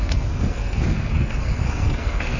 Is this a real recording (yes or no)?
no